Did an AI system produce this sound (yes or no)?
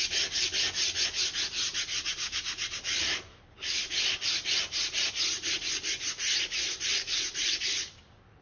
no